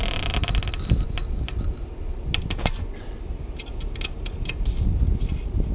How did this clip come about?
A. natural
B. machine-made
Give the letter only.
A